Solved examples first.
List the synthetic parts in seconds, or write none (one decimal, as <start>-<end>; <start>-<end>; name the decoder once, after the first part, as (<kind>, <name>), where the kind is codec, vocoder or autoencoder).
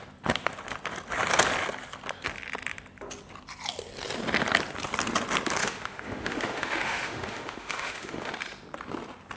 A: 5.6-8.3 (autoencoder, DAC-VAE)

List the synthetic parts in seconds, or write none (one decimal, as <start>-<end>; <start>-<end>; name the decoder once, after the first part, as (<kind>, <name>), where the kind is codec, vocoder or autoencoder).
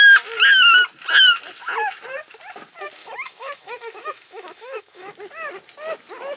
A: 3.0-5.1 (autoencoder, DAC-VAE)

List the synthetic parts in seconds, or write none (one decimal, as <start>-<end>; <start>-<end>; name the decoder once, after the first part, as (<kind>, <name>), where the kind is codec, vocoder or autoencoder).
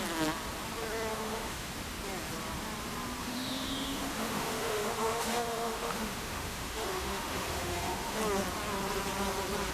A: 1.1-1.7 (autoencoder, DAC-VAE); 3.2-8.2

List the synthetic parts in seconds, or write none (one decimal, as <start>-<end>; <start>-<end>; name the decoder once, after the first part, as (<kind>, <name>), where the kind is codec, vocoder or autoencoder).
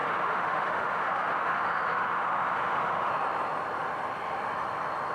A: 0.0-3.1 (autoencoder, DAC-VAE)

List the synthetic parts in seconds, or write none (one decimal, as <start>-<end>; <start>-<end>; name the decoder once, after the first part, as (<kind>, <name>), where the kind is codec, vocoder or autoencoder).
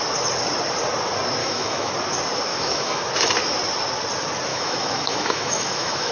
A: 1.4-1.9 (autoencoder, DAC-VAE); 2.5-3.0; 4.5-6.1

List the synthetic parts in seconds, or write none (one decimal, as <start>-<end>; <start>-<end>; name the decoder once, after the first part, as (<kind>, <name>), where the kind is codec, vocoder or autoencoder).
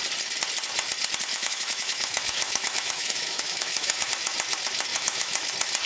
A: 1.3-4.1 (autoencoder, DAC-VAE); 4.9-5.5